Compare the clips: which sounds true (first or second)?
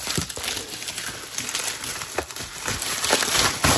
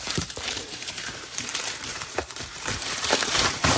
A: first